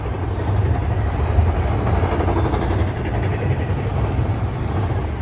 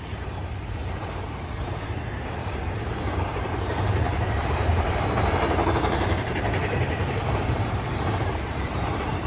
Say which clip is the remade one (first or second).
second